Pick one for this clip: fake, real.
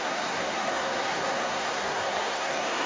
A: fake